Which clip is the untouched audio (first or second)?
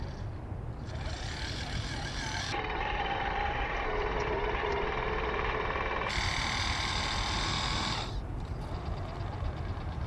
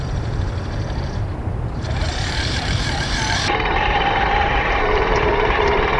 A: first